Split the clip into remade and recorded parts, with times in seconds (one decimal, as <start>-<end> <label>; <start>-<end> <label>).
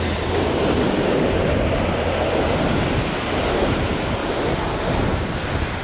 0.0-4.2 remade; 4.2-5.0 recorded; 5.0-5.8 remade